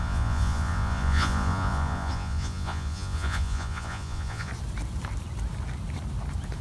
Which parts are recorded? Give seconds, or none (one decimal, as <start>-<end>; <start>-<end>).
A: 4.5-6.6